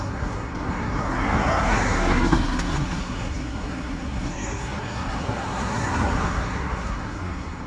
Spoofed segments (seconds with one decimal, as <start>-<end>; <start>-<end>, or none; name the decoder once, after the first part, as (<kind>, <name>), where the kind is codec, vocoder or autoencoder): 0.0-7.7 (codec, SNAC)